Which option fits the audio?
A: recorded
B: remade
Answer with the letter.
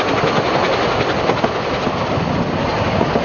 A